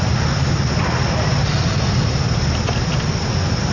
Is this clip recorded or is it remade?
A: recorded